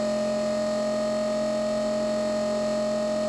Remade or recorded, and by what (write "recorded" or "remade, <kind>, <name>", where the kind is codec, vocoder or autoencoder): recorded